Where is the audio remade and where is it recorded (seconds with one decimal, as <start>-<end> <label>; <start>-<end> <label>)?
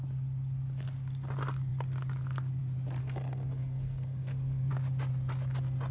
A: 0.0-3.0 recorded; 3.0-4.7 remade; 4.7-5.9 recorded